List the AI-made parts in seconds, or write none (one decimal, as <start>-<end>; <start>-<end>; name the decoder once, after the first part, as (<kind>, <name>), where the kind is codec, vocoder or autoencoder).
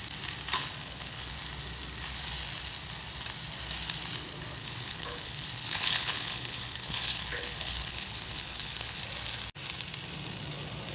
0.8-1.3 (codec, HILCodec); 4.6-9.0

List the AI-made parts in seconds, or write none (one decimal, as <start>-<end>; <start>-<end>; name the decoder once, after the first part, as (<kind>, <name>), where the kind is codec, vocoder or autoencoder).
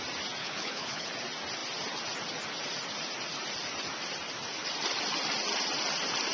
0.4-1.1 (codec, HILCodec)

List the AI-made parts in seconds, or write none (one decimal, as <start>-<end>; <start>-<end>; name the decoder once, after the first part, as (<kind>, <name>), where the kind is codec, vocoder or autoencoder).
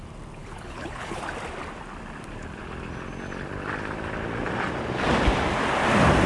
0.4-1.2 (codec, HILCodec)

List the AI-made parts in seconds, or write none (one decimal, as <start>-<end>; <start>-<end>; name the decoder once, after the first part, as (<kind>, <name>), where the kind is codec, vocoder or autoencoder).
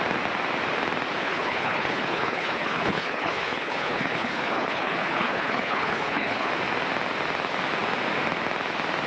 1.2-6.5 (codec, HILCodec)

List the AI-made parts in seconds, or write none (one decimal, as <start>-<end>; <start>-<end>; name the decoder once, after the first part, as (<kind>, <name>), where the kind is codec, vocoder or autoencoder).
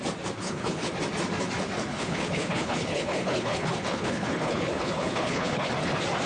0.4-0.9 (codec, HILCodec); 1.9-5.7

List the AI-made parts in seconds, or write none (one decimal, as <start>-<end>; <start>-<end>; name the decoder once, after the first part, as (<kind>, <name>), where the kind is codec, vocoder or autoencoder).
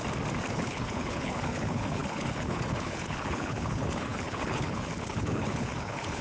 0.5-6.2 (codec, HILCodec)